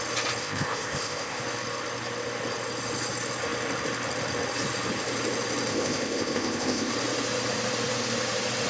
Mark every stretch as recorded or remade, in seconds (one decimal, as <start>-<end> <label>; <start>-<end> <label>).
0.0-0.4 recorded; 0.4-1.4 remade; 1.4-5.7 recorded; 5.7-6.9 remade; 6.9-8.7 recorded